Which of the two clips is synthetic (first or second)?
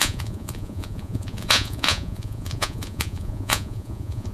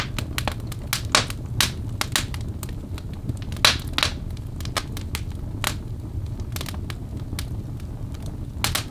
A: first